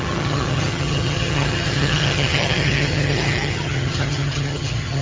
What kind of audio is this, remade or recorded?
remade